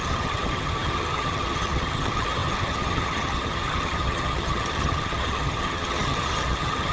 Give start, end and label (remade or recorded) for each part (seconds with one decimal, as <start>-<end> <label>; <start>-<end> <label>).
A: 0.0-6.9 remade